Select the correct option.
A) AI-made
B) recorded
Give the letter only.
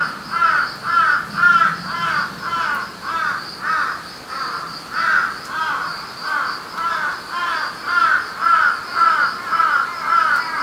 B